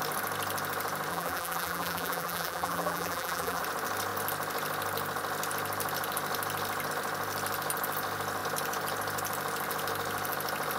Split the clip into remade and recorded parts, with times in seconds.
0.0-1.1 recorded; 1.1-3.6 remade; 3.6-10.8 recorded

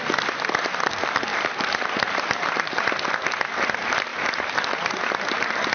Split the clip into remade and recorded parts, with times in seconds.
0.0-1.3 recorded; 1.3-2.9 remade; 2.9-4.1 recorded; 4.1-4.6 remade; 4.6-5.7 recorded

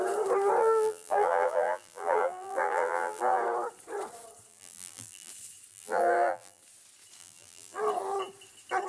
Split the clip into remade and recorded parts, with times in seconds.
0.0-0.6 recorded; 0.6-3.4 remade; 3.4-4.5 recorded; 4.5-5.3 remade; 5.3-5.7 recorded; 5.7-6.6 remade; 6.6-7.2 recorded; 7.2-7.8 remade; 7.8-8.9 recorded

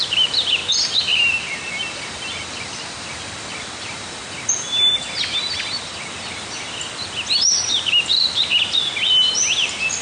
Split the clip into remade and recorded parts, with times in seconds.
0.0-0.6 remade; 0.6-1.3 recorded; 1.3-4.2 remade; 4.2-7.4 recorded; 7.4-8.4 remade; 8.4-9.1 recorded; 9.1-10.0 remade

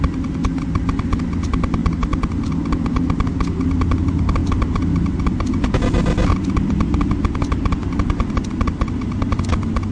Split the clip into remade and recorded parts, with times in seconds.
0.0-9.9 recorded

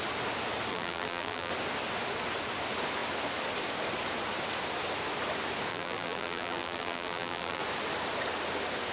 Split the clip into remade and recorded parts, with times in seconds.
0.0-0.7 recorded; 0.7-1.5 remade; 1.5-5.7 recorded; 5.7-7.6 remade; 7.6-8.9 recorded